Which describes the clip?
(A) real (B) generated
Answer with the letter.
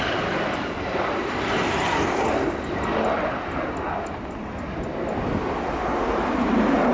A